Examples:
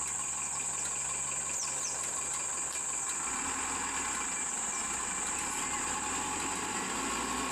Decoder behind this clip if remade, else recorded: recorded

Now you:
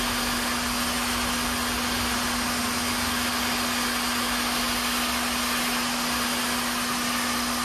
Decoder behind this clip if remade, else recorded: recorded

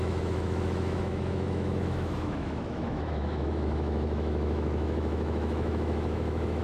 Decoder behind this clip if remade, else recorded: remade, autoencoder, DAC-VAE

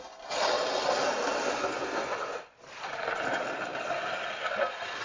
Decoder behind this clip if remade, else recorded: recorded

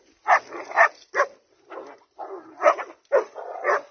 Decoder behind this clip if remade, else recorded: recorded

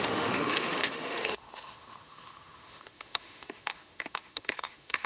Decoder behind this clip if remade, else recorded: remade, autoencoder, DAC-VAE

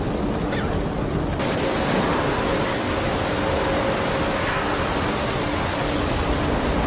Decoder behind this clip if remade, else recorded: recorded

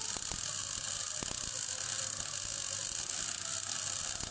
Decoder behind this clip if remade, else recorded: recorded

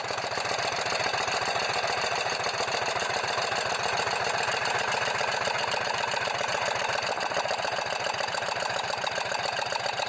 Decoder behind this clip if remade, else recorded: recorded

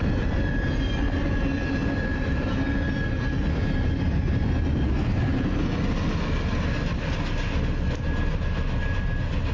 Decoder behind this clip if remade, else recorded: recorded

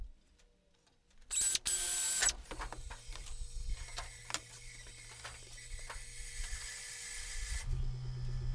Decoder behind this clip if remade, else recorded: recorded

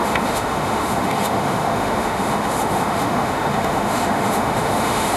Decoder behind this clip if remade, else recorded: remade, autoencoder, DAC-VAE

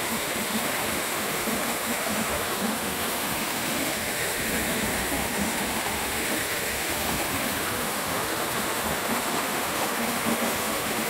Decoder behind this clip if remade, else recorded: remade, autoencoder, DAC-VAE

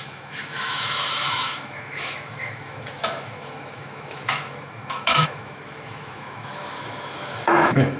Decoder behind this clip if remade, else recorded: remade, autoencoder, DAC-VAE